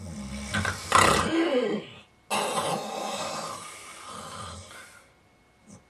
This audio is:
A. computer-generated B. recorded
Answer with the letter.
B